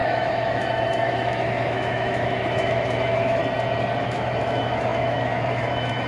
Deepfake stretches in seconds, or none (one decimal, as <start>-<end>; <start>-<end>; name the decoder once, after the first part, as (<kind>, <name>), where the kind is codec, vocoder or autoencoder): 0.0-3.4 (autoencoder, DAC-VAE); 4.0-6.1